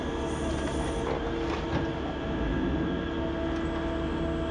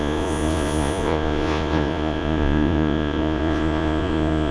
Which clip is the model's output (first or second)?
second